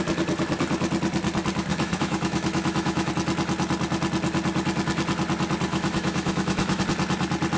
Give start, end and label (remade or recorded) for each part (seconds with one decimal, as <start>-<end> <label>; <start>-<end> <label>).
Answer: 0.0-1.7 recorded; 1.7-3.1 remade; 3.1-5.7 recorded; 5.7-6.8 remade; 6.8-7.6 recorded